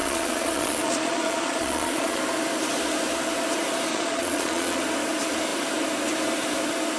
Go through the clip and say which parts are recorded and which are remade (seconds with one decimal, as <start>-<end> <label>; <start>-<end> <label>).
0.0-2.2 remade; 2.2-3.9 recorded; 3.9-4.8 remade; 4.8-7.0 recorded